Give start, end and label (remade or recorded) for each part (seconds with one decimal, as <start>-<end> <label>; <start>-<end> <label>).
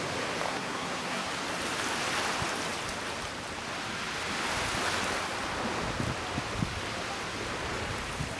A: 0.0-0.5 recorded; 0.5-1.3 remade; 1.3-8.4 recorded